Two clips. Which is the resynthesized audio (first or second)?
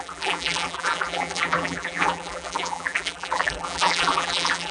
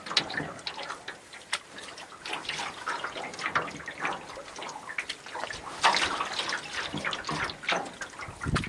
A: first